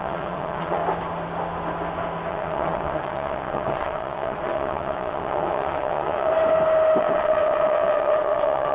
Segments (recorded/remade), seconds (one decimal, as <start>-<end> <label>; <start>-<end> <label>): 0.0-0.8 remade; 0.8-2.3 recorded; 2.3-6.3 remade; 6.3-7.0 recorded; 7.0-8.7 remade